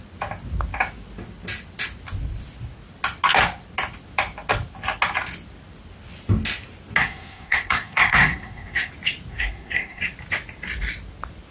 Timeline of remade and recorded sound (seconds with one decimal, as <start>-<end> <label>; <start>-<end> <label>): 0.0-7.0 recorded; 7.0-8.9 remade; 8.9-9.3 recorded; 9.3-10.0 remade; 10.0-11.5 recorded